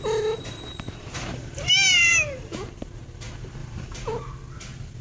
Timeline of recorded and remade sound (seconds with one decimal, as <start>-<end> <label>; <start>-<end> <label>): 0.0-1.0 recorded; 1.0-1.7 remade; 1.7-3.6 recorded; 3.6-4.1 remade; 4.1-5.0 recorded